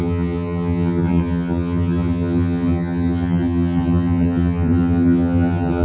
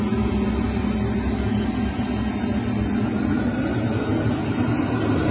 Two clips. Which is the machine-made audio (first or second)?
first